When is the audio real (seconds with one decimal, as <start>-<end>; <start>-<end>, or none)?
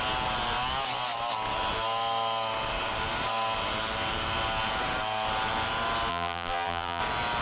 0.0-6.1; 7.0-7.4